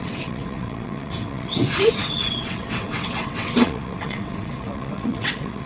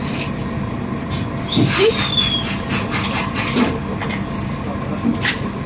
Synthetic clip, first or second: first